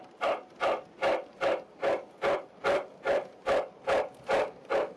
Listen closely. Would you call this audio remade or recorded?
recorded